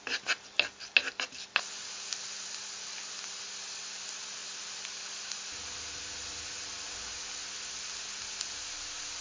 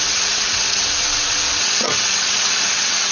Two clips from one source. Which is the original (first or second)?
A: first